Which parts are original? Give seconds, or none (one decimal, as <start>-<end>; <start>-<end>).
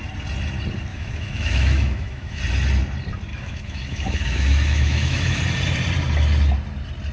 0.0-0.9; 2.4-3.3; 5.4-7.1